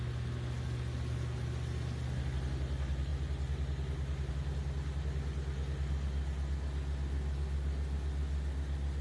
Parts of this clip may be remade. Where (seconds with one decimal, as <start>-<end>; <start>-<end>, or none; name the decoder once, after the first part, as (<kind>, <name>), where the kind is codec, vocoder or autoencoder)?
none